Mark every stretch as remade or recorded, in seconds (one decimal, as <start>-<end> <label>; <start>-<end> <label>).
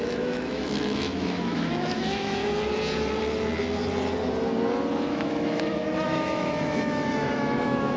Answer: 0.0-2.4 remade; 2.4-5.1 recorded; 5.1-8.0 remade